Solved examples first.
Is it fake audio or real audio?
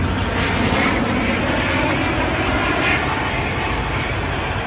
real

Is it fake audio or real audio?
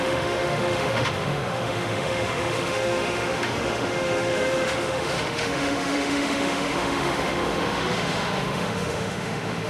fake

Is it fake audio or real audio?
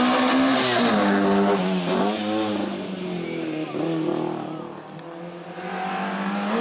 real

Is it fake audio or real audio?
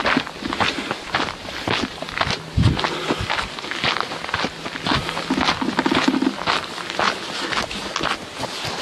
real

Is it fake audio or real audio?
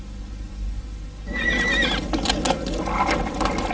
real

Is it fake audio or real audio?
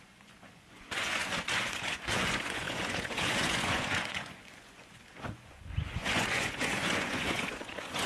fake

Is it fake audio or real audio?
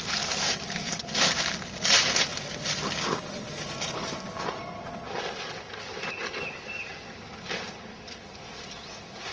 real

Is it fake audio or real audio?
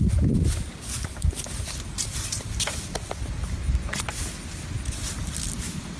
real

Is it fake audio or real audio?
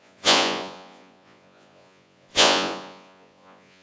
fake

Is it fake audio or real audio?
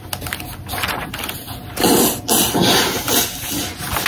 real